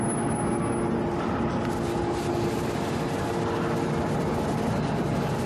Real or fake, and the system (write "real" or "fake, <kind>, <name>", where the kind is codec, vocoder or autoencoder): real